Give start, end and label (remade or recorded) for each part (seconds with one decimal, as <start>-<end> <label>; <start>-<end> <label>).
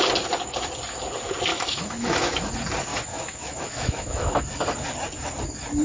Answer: 0.0-1.5 recorded; 1.5-2.5 remade; 2.5-2.9 recorded; 2.9-4.4 remade; 4.4-5.8 recorded